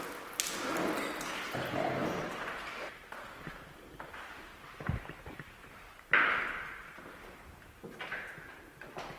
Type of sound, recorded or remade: recorded